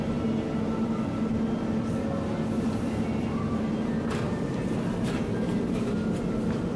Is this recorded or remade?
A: recorded